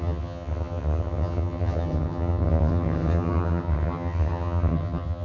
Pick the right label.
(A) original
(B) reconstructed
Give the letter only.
B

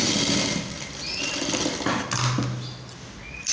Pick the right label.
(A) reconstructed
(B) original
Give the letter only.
B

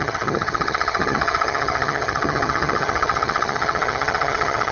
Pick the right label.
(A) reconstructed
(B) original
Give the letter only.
A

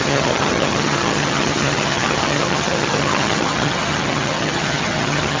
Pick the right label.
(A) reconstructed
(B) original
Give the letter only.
A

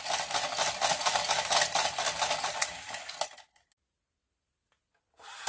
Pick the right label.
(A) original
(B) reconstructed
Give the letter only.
A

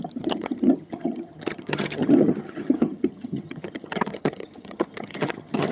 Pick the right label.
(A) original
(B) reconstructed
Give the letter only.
B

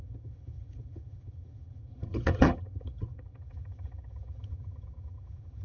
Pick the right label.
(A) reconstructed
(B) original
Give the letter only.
A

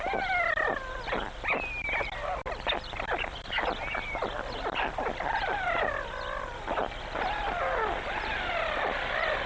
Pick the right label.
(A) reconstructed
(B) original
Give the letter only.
B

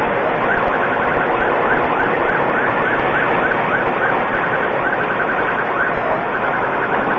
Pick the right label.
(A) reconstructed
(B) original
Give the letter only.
B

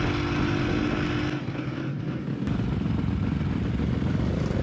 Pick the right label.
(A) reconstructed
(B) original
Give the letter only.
B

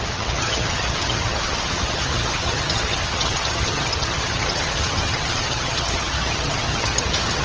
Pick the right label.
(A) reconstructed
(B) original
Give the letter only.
A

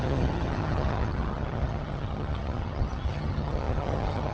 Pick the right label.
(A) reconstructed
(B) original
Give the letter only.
A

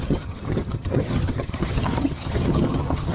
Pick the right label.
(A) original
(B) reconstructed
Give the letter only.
B